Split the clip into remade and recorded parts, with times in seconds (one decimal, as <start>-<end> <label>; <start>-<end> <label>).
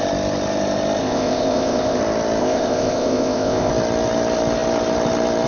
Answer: 0.0-1.0 recorded; 1.0-2.0 remade; 2.0-2.4 recorded; 2.4-3.7 remade; 3.7-5.5 recorded